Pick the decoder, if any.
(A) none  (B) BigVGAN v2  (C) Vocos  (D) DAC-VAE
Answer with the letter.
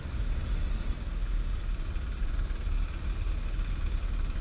A